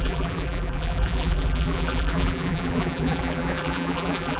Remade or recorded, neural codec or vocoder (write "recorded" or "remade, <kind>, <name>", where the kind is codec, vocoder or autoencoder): remade, vocoder, BigVGAN v2